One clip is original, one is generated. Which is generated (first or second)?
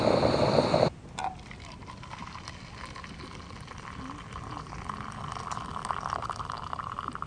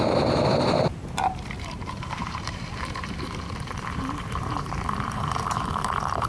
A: second